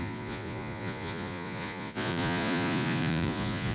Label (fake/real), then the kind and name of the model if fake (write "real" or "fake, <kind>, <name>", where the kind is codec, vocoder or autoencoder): fake, vocoder, Vocos